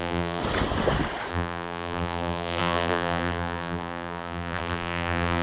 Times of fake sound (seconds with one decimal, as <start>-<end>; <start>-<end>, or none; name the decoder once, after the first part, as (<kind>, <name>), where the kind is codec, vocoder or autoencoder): 0.0-0.4 (vocoder, BigVGAN v2); 1.3-5.4